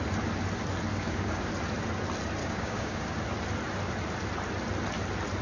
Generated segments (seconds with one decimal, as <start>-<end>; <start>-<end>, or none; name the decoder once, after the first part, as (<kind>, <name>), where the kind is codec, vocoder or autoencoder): 0.9-1.5 (codec, DAC); 2.4-3.2